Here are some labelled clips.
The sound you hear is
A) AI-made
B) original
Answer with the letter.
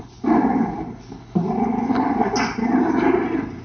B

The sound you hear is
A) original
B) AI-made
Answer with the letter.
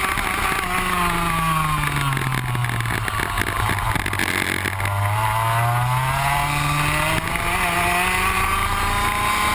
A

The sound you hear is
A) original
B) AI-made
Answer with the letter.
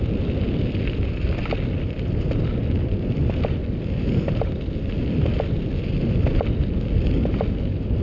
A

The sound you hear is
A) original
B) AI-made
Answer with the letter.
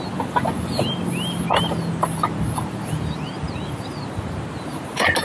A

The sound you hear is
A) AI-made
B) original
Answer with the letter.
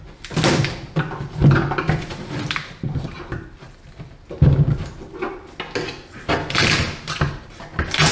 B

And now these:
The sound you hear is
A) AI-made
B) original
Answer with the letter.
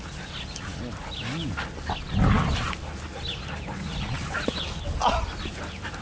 B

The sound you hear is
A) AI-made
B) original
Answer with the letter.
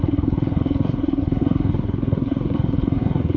A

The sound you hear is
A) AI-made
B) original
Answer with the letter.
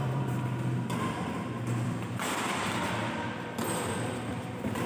A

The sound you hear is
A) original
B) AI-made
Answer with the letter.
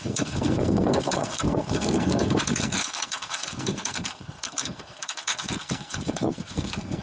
B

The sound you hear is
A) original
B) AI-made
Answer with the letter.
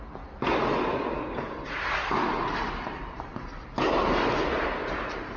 A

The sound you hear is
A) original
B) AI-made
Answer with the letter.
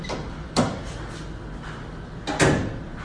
A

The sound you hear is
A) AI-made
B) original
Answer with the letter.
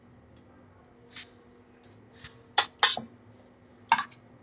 B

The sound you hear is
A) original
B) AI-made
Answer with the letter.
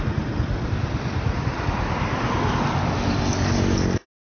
A